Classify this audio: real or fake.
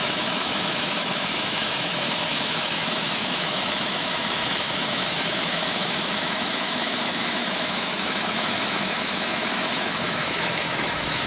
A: fake